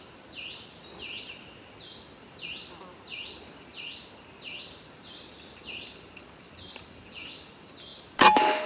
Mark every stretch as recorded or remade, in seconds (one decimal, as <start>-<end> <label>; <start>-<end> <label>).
0.0-8.7 recorded